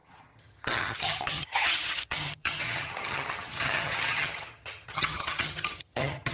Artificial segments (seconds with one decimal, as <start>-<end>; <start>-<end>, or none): 0.0-6.3